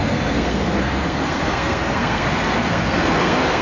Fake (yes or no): yes